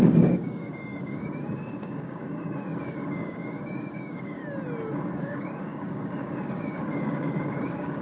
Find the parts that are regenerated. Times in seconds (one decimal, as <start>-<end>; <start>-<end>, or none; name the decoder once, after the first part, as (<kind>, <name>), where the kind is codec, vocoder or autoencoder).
0.0-4.4 (codec, DAC); 5.1-8.0